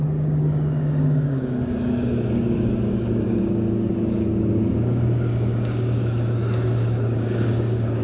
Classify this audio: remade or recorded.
remade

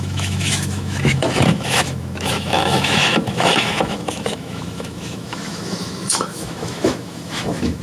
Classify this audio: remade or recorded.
remade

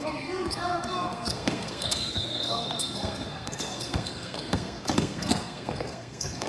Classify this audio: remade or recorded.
remade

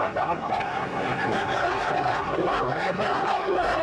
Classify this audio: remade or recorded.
remade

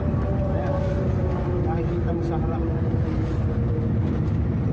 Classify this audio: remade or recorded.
recorded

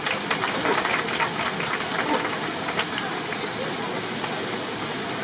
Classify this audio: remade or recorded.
recorded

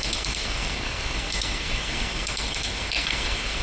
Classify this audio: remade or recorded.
remade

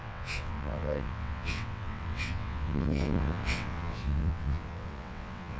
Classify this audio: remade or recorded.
remade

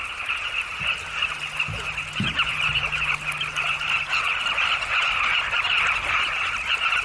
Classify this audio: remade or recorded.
recorded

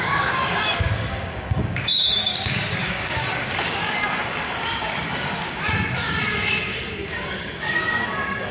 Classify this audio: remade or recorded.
remade